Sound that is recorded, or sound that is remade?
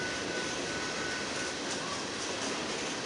recorded